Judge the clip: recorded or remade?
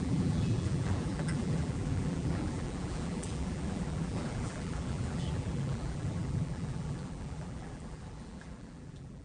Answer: remade